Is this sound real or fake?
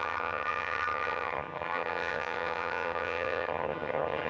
fake